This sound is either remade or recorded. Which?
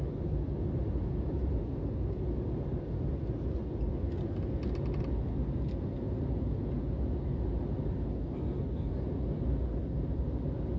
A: recorded